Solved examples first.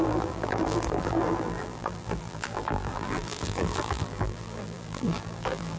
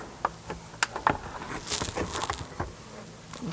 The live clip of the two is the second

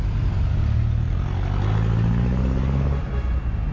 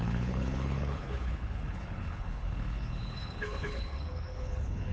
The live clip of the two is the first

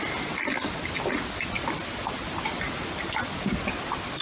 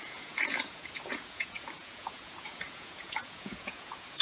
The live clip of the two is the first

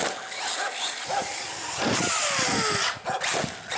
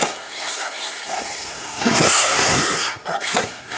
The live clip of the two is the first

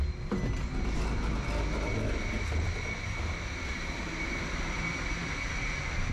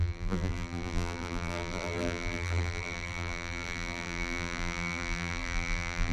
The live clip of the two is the first